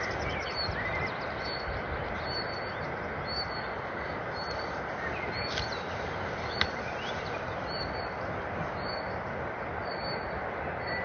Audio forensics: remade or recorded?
recorded